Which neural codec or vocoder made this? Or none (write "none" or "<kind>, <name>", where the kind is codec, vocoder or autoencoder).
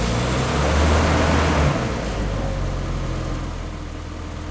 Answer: none